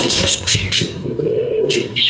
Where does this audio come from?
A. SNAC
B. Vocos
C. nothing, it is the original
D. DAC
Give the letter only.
A